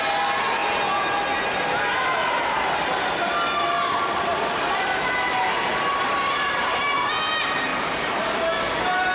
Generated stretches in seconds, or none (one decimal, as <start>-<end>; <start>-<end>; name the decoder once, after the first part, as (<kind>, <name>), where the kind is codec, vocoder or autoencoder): 4.3-6.6 (vocoder, BigVGAN v2); 7.7-8.3

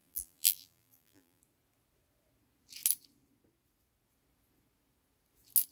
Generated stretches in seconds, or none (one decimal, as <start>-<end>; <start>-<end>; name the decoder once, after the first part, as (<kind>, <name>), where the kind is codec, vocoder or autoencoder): 0.0-1.4 (vocoder, BigVGAN v2)

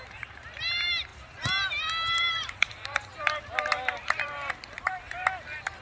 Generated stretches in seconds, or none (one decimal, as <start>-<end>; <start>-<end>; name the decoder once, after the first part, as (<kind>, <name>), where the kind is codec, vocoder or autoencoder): 0.0-5.8 (vocoder, BigVGAN v2)